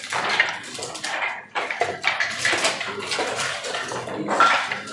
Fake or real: real